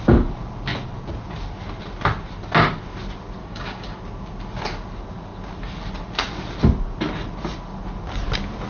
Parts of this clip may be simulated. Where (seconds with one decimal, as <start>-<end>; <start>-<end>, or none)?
3.4-4.0